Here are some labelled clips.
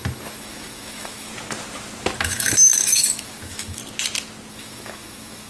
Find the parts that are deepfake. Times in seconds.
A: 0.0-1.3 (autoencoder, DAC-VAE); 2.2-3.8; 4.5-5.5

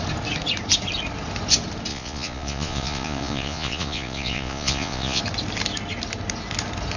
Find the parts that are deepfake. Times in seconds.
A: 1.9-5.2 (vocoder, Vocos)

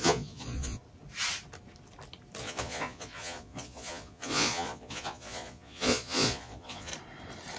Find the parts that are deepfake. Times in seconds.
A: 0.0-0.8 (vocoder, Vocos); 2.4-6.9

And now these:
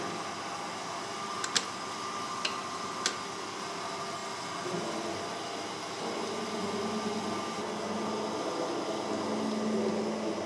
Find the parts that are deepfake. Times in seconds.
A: none

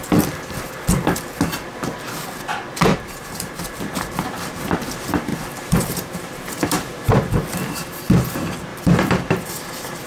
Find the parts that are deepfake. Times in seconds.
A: 2.9-3.8 (vocoder, BigVGAN v2); 5.3-6.5; 8.7-9.5